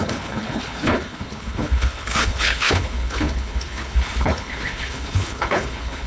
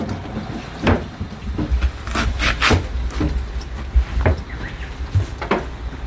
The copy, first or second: first